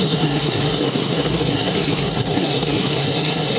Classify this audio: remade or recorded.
remade